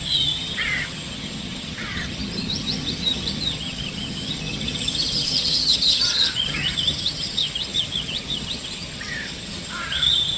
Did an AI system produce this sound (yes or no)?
yes